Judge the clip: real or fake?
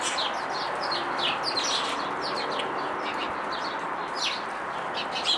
real